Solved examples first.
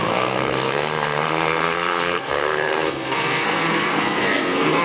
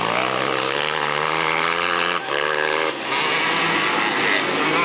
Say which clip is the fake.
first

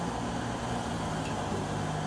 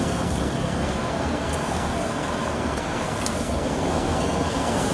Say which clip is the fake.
second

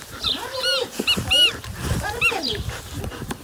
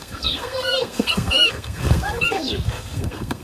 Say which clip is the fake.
second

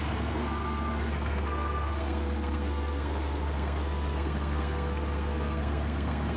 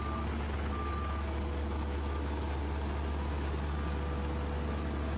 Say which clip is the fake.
first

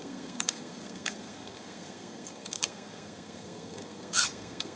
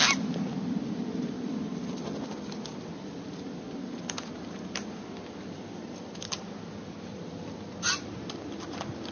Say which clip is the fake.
first